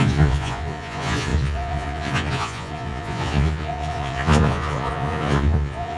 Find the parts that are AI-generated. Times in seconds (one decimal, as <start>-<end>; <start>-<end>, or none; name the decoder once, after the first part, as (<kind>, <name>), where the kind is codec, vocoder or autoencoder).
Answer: 0.0-6.0 (vocoder, Vocos)